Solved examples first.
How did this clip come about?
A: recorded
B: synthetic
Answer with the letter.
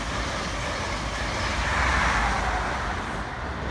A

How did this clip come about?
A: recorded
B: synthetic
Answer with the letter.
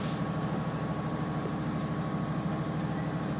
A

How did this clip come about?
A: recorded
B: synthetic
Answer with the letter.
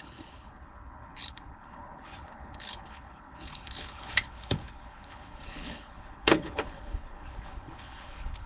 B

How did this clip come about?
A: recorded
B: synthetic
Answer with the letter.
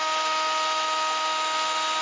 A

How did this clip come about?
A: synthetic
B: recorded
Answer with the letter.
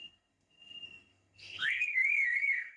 A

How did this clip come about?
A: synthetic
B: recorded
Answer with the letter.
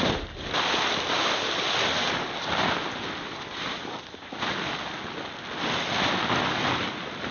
B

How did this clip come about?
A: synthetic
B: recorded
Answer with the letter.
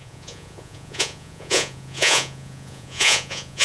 A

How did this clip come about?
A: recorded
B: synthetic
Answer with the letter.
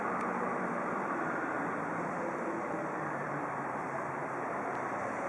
B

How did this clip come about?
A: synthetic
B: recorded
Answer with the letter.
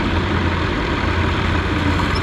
B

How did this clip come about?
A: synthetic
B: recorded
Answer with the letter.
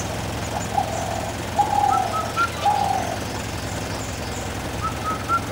B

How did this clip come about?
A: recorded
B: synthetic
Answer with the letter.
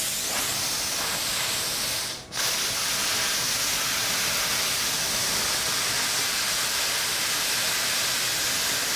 A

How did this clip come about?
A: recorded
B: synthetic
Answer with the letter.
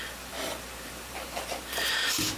B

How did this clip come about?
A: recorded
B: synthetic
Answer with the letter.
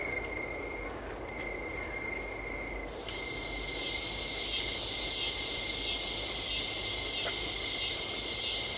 A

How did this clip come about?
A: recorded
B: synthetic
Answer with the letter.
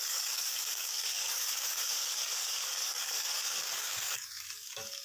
B